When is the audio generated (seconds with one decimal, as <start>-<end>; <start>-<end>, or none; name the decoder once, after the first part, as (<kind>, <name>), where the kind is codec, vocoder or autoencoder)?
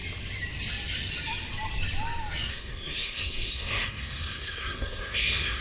2.5-5.6 (codec, SNAC)